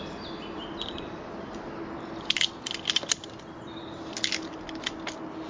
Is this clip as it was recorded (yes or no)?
yes